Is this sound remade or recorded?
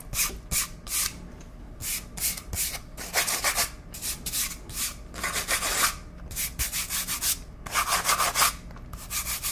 recorded